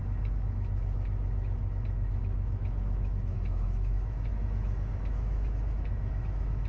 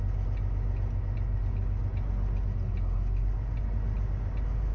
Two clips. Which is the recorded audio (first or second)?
second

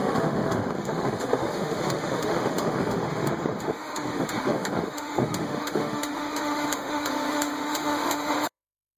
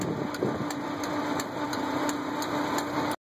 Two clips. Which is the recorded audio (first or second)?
second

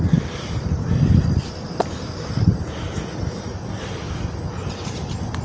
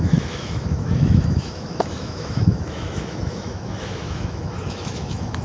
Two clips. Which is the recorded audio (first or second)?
first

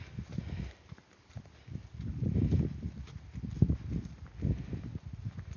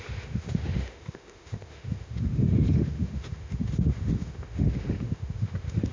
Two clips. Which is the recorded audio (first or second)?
first